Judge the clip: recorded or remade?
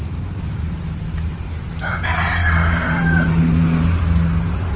recorded